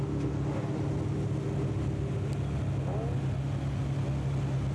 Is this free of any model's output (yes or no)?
yes